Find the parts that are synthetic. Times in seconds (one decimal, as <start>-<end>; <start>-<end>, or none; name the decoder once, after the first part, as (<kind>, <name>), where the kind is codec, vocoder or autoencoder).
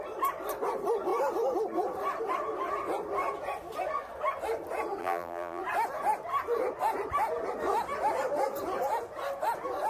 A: 5.0-5.6 (vocoder, BigVGAN v2)